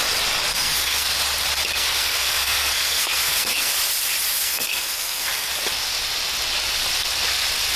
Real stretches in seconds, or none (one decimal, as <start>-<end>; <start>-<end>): 0.0-0.5; 1.1-1.7; 3.7-4.4; 5.5-7.8